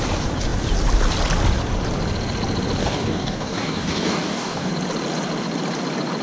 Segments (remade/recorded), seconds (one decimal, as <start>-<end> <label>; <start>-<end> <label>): 0.0-2.8 recorded; 2.8-4.7 remade; 4.7-6.2 recorded